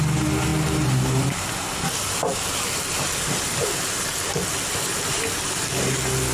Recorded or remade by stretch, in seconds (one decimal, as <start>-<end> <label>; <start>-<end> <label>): 0.0-6.3 recorded